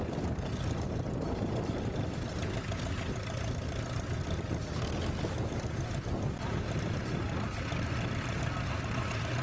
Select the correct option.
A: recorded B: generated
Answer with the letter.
A